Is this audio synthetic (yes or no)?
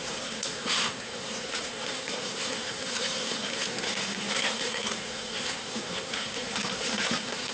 yes